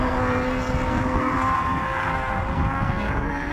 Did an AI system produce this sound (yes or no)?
yes